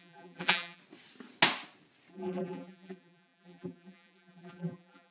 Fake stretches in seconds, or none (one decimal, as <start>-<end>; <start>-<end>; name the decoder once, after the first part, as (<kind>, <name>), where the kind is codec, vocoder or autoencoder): 0.0-0.8 (vocoder, BigVGAN v2); 2.1-5.1